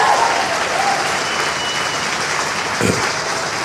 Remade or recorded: recorded